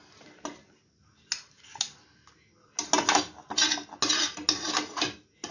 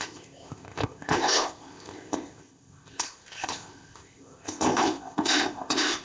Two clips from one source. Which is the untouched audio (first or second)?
first